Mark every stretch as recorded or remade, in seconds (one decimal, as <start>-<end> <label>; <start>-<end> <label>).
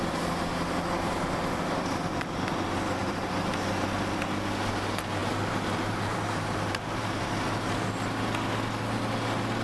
0.0-3.0 recorded; 3.0-3.5 remade; 3.5-5.2 recorded; 5.2-7.9 remade; 7.9-9.6 recorded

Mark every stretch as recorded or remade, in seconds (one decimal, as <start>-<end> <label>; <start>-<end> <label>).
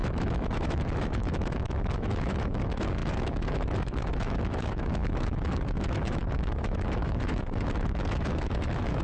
0.0-9.0 remade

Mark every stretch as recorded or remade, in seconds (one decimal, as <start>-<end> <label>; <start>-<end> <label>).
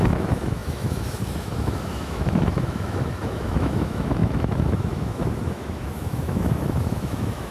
0.0-7.5 remade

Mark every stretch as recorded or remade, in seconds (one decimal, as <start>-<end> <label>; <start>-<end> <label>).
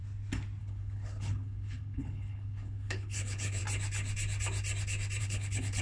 0.0-0.6 recorded; 0.6-3.6 remade; 3.6-5.2 recorded; 5.2-5.8 remade